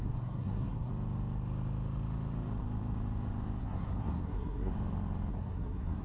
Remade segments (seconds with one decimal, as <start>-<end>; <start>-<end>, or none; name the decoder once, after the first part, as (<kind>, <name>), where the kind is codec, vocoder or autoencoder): 0.0-0.9 (codec, SNAC); 3.6-4.7; 5.3-6.0

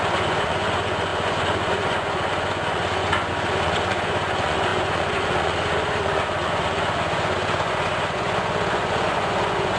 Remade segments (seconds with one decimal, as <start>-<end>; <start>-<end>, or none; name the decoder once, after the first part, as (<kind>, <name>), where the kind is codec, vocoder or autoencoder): 0.0-9.8 (vocoder, Vocos)

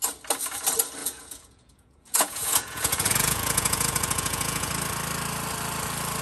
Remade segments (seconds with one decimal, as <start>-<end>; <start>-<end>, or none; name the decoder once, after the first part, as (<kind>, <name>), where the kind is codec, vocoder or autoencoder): 1.0-4.7 (vocoder, Vocos)

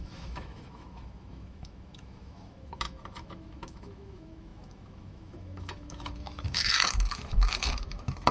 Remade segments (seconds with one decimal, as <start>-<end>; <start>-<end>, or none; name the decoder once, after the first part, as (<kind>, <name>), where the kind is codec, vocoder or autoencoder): 0.0-8.3 (autoencoder, DAC-VAE)